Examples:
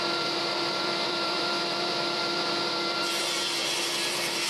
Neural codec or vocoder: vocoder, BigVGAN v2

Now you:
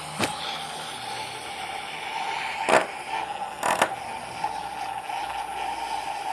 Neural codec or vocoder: none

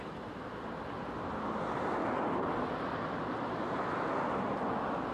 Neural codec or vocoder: none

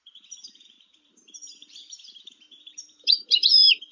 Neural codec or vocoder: vocoder, BigVGAN v2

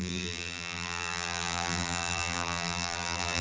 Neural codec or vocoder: vocoder, BigVGAN v2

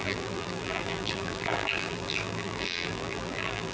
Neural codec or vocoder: vocoder, BigVGAN v2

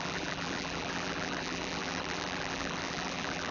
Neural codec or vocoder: vocoder, BigVGAN v2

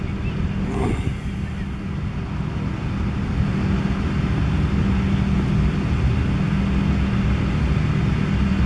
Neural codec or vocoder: none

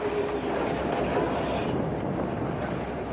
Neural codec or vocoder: none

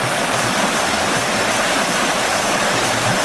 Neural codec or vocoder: vocoder, BigVGAN v2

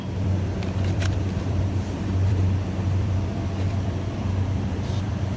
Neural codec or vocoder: vocoder, BigVGAN v2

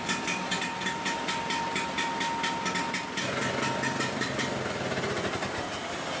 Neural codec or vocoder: none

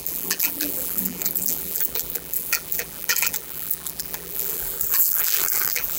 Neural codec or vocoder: vocoder, BigVGAN v2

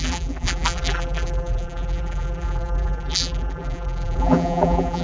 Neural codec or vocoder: vocoder, BigVGAN v2